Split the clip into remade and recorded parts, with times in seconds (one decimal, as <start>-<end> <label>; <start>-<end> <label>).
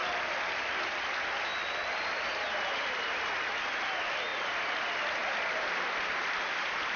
0.0-3.9 recorded; 3.9-7.0 remade